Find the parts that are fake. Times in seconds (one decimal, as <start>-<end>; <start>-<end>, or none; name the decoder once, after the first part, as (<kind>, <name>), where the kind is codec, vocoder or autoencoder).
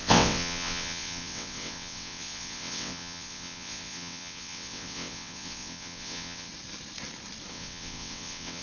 0.0-6.5 (vocoder, WaveNeXt); 7.5-8.6